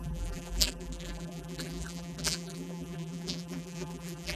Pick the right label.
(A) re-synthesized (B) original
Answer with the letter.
A